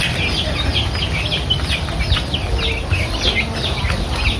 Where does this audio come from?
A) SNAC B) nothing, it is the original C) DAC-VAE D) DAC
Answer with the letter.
B